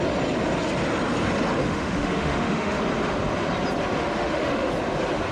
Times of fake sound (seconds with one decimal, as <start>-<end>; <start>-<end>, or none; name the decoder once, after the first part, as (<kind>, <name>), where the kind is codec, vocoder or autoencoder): 1.6-2.8 (autoencoder, DAC-VAE); 4.0-4.7